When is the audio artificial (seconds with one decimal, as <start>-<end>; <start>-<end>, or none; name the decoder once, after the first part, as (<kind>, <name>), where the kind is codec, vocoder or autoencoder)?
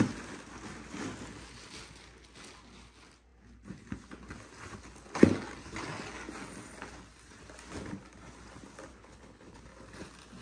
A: 8.9-9.6 (codec, HILCodec)